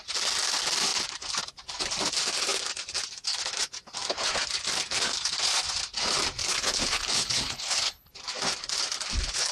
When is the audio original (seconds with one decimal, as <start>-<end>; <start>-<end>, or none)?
0.0-6.4; 8.1-9.5